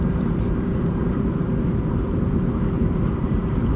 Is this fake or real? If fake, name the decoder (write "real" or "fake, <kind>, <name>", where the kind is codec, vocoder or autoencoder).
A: fake, vocoder, BigVGAN v2